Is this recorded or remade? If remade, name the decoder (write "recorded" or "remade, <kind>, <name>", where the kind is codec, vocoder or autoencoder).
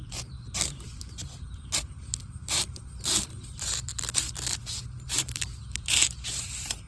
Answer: remade, vocoder, BigVGAN v2